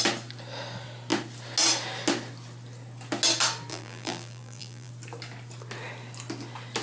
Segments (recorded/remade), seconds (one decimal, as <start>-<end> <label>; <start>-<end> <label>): 0.0-3.7 recorded; 3.7-4.9 remade; 4.9-6.8 recorded